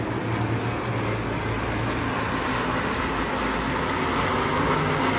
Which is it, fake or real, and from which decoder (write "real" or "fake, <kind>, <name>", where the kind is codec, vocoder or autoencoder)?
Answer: real